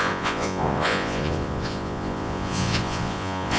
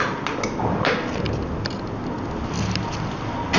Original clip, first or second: second